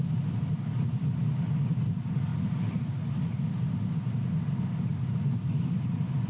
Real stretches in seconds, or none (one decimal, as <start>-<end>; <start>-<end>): 0.0-6.3